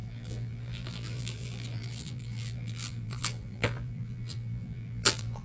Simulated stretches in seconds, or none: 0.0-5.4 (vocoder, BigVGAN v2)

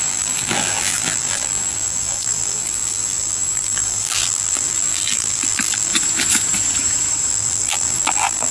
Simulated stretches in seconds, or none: 0.0-5.9 (vocoder, BigVGAN v2); 7.3-8.5

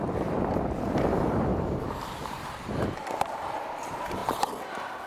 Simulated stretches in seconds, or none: 0.0-4.2 (vocoder, BigVGAN v2)

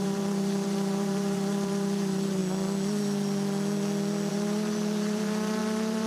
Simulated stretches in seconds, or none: 0.0-2.4 (vocoder, BigVGAN v2); 4.3-6.1

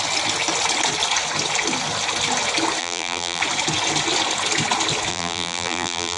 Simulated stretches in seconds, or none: 2.8-3.4 (vocoder, BigVGAN v2); 5.1-6.2